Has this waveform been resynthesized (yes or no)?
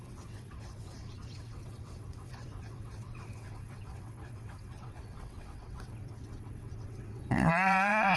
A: yes